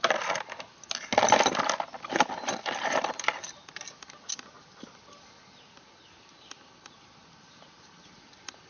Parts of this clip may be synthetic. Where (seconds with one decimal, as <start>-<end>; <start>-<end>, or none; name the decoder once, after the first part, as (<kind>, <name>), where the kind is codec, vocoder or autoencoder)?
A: none